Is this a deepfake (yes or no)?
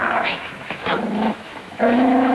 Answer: yes